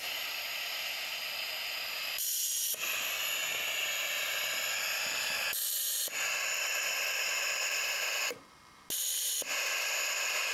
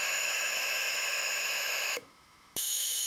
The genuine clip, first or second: first